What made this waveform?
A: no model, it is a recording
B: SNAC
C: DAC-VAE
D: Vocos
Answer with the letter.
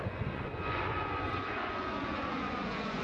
D